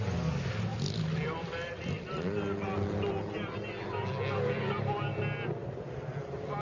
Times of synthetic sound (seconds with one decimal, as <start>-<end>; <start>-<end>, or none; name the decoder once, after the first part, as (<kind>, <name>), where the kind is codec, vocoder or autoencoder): none

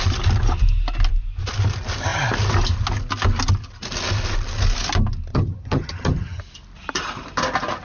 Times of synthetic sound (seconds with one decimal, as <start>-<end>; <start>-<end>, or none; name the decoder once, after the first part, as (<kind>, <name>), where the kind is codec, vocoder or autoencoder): 5.3-6.4 (vocoder, HiFi-GAN)

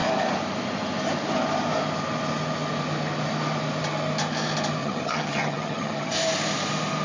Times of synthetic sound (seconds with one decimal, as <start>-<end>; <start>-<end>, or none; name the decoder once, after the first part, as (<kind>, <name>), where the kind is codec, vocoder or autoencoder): 4.8-6.1 (vocoder, HiFi-GAN)